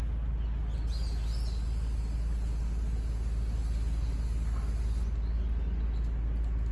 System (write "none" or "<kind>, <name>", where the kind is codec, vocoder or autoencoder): none